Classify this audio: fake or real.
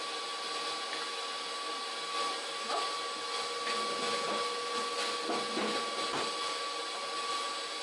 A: real